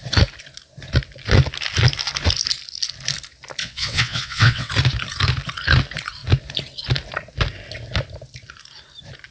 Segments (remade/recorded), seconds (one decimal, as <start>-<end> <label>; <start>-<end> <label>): 0.0-3.6 recorded; 3.6-4.7 remade; 4.7-9.3 recorded